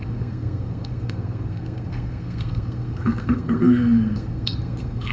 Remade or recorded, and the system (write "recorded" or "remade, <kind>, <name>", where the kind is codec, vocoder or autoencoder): remade, codec, SNAC